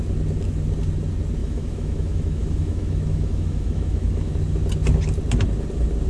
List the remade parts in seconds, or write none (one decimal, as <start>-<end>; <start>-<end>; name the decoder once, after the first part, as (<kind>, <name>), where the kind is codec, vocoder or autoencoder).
1.4-4.3 (autoencoder, DAC-VAE)